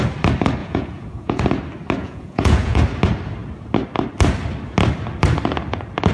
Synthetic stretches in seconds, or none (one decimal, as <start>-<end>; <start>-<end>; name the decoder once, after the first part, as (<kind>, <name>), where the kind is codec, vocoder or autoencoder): 0.6-1.4 (vocoder, Vocos); 2.0-2.8